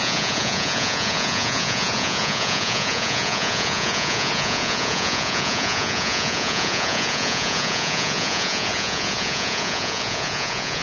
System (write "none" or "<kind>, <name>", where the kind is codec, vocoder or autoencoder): vocoder, Vocos